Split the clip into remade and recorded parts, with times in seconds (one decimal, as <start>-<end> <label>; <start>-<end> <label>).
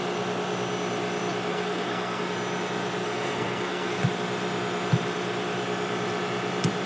0.0-1.5 recorded; 1.5-2.2 remade; 2.2-3.0 recorded; 3.0-4.0 remade; 4.0-6.9 recorded